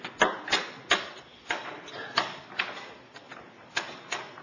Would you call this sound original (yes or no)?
yes